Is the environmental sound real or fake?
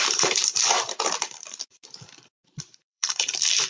fake